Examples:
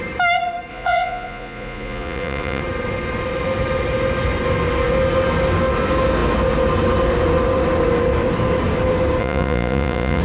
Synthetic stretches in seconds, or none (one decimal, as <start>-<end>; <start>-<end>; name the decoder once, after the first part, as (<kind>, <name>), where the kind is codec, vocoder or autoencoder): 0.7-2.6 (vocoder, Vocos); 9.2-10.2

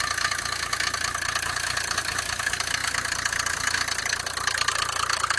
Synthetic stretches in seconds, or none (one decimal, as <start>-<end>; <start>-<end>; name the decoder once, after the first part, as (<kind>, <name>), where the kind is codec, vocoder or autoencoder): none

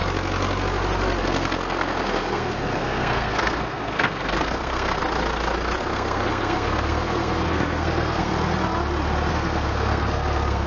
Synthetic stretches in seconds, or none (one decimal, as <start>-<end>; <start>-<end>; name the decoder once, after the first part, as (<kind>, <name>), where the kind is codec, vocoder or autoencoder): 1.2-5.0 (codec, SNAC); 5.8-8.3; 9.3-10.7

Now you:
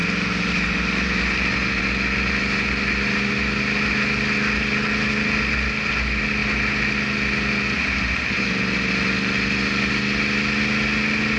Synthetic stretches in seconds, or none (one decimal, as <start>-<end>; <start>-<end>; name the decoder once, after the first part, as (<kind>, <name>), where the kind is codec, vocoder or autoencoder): none